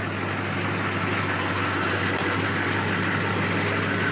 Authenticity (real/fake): real